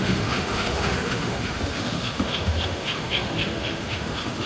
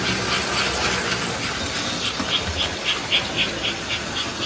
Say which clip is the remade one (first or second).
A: first